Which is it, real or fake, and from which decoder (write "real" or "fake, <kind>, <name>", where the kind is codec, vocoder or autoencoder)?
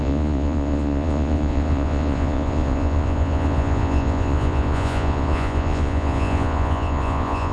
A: fake, vocoder, Vocos